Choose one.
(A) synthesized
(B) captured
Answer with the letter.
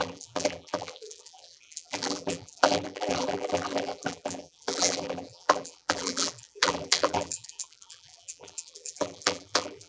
A